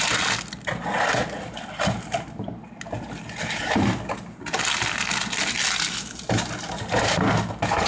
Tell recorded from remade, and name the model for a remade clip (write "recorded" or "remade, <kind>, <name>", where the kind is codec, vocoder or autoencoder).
recorded